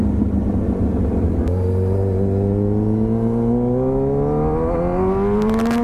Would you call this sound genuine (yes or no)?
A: yes